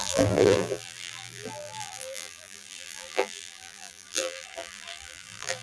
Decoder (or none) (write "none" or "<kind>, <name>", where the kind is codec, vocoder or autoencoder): vocoder, BigVGAN v2